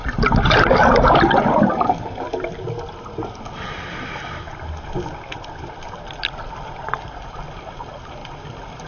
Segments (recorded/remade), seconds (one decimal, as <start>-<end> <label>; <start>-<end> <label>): 0.0-8.9 recorded